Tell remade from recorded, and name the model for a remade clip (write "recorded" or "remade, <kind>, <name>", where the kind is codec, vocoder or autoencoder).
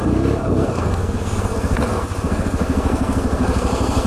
remade, codec, SNAC